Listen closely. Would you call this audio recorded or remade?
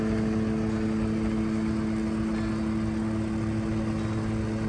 recorded